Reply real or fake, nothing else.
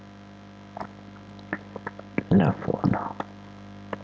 real